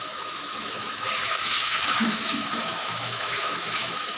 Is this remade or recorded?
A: remade